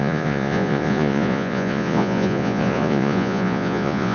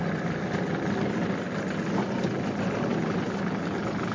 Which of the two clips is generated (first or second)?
first